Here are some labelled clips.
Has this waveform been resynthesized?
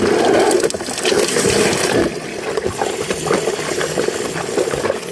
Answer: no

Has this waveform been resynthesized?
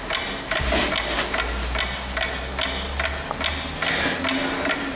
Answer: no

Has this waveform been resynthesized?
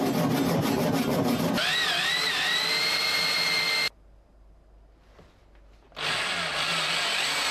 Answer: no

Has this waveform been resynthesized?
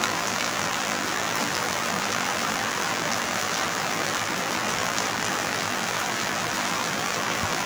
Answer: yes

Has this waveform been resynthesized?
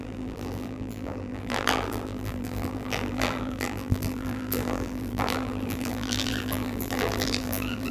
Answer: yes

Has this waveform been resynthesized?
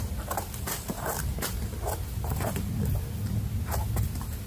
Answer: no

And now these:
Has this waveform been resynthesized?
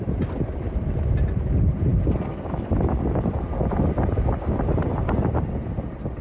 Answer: no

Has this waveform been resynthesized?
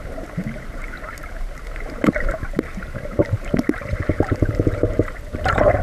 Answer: yes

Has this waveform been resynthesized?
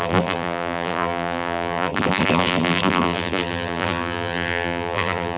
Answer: yes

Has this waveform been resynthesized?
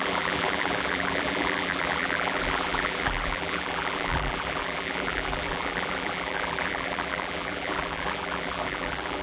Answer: yes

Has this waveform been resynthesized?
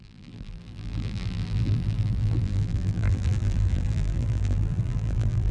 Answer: yes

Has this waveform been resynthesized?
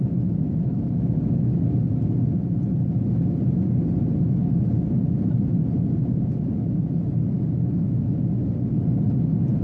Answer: no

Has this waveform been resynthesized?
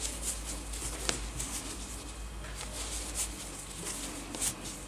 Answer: no